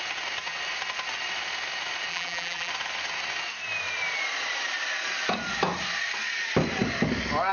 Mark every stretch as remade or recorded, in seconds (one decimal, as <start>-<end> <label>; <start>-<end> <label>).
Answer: 0.0-2.1 recorded; 2.1-2.7 remade; 2.7-7.5 recorded